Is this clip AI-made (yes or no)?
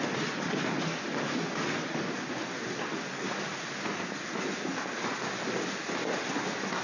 no